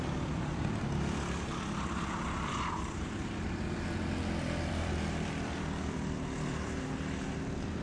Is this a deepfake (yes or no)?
yes